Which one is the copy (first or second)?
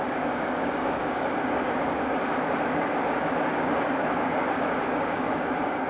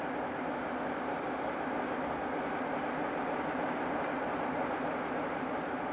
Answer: first